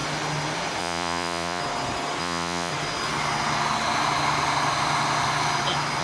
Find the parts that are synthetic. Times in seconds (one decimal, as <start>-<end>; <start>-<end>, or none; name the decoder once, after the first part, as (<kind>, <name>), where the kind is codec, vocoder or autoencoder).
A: 0.8-1.6 (vocoder, Vocos); 2.2-2.7